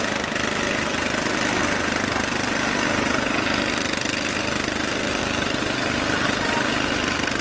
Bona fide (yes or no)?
yes